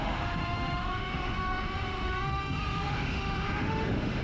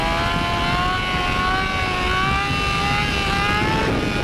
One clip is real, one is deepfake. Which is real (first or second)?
second